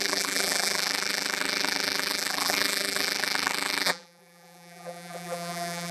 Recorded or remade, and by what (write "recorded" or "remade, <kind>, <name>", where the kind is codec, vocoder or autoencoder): remade, vocoder, BigVGAN v2